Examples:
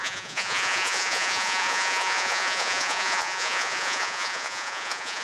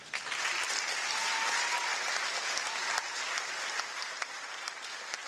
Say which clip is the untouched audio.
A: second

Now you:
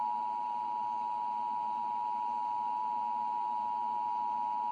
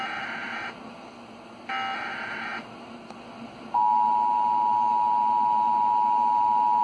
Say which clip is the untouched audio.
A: second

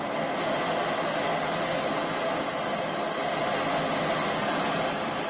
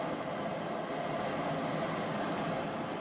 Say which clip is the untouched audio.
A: first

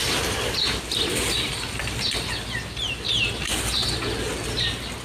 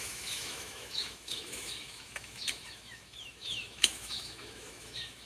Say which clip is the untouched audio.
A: first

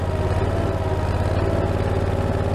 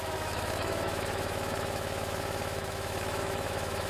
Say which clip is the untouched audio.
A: first